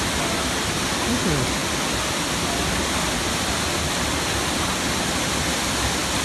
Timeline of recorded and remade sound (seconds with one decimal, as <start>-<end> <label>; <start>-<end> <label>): 0.0-6.2 recorded